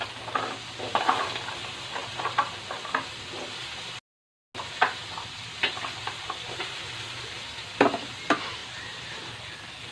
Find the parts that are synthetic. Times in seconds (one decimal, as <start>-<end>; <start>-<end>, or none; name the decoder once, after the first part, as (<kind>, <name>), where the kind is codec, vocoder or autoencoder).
8.6-9.2 (vocoder, BigVGAN v2)